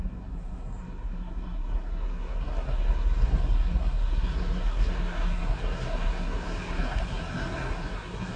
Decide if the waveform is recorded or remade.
remade